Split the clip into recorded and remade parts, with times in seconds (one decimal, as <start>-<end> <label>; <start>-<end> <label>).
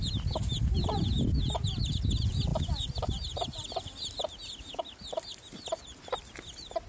0.0-1.6 remade; 1.6-2.5 recorded; 2.5-3.7 remade; 3.7-6.9 recorded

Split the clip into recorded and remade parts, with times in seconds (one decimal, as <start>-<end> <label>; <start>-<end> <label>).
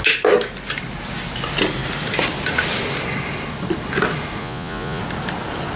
0.0-4.4 recorded; 4.4-5.0 remade; 5.0-5.8 recorded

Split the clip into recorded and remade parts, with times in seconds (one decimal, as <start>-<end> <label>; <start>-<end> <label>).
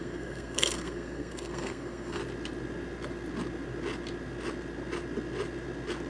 0.0-2.2 remade; 2.2-6.1 recorded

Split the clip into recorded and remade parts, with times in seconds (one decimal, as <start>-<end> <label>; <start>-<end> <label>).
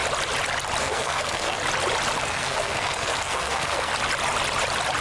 0.0-0.8 recorded; 0.8-1.6 remade; 1.6-2.2 recorded; 2.2-3.9 remade; 3.9-5.0 recorded